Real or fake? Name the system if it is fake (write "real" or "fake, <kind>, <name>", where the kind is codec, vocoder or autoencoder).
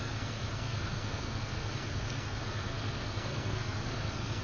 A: fake, codec, SNAC